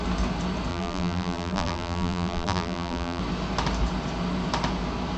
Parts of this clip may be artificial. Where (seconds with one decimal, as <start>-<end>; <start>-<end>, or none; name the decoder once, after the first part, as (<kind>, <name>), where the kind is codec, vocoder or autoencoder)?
0.7-3.2 (vocoder, BigVGAN v2)